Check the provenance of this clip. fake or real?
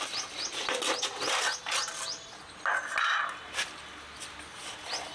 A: real